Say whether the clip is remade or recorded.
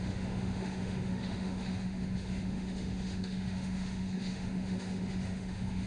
remade